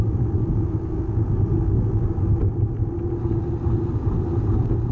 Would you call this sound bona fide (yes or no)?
yes